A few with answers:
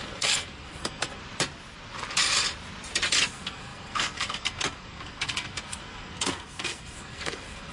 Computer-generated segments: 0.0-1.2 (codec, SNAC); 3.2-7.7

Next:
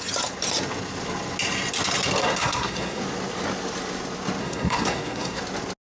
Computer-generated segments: 2.2-3.0 (codec, SNAC); 4.4-5.4

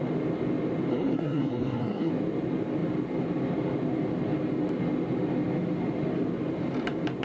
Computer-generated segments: 0.9-2.1 (codec, SNAC)

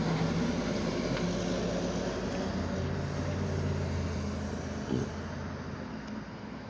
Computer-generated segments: 5.9-6.7 (codec, SNAC)

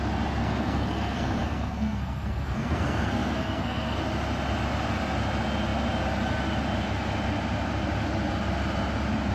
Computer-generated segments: 0.4-4.0 (codec, SNAC)